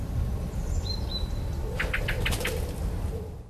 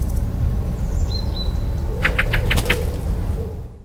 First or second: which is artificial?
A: first